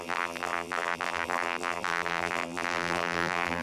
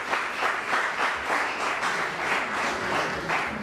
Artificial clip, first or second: first